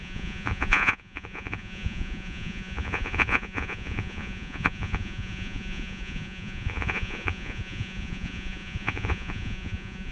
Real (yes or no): no